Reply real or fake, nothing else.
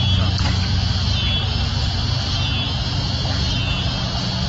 real